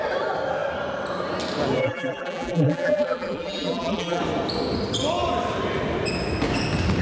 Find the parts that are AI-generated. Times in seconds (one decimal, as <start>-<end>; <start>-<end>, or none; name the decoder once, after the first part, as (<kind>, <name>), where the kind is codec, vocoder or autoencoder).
1.8-4.2 (vocoder, BigVGAN v2)